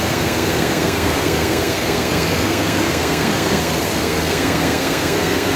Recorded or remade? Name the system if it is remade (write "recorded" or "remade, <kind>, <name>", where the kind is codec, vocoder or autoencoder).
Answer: remade, codec, SNAC